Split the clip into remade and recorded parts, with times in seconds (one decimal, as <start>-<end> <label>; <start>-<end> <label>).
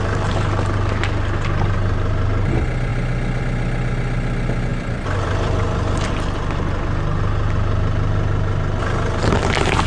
0.0-4.7 recorded; 4.7-6.1 remade; 6.1-9.9 recorded